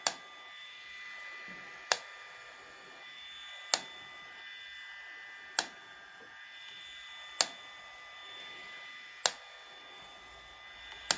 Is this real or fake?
real